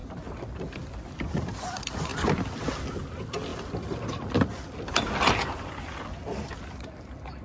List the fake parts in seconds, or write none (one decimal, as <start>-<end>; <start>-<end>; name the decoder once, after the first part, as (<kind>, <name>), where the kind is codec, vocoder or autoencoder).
none